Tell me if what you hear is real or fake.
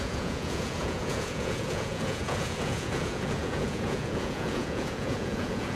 fake